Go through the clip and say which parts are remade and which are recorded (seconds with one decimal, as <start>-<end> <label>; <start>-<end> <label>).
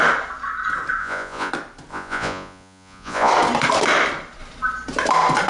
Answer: 0.0-1.0 recorded; 1.0-1.5 remade; 1.5-1.9 recorded; 1.9-3.3 remade; 3.3-5.5 recorded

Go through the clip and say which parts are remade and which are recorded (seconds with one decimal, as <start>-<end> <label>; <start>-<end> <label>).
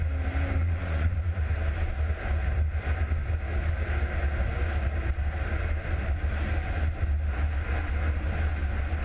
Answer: 0.0-0.6 recorded; 0.6-1.4 remade; 1.4-9.0 recorded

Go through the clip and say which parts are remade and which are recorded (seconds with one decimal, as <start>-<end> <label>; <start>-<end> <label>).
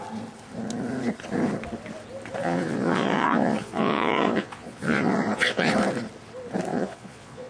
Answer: 0.0-2.4 recorded; 2.4-5.7 remade; 5.7-6.7 recorded; 6.7-7.5 remade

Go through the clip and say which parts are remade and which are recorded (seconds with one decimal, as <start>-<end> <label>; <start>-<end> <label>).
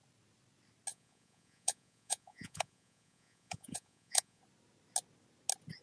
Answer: 0.0-0.9 recorded; 0.9-4.4 remade; 4.4-5.8 recorded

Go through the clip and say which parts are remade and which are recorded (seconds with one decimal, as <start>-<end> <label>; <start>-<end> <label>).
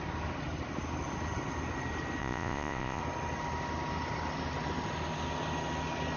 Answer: 0.0-2.2 recorded; 2.2-3.0 remade; 3.0-6.2 recorded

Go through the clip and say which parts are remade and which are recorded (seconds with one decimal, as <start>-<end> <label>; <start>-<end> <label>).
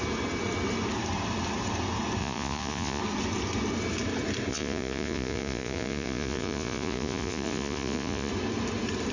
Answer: 0.0-2.2 recorded; 2.2-3.0 remade; 3.0-4.5 recorded; 4.5-8.3 remade; 8.3-9.1 recorded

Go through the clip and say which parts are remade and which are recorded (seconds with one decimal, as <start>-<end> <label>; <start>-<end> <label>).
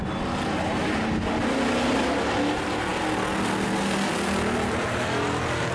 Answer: 0.0-5.7 recorded